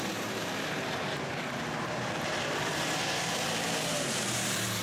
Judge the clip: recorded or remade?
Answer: remade